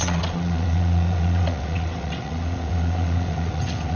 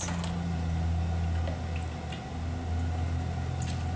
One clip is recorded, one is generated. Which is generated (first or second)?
first